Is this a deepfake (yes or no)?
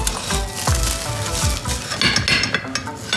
no